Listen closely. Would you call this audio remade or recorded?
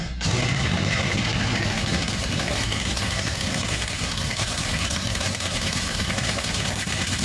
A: remade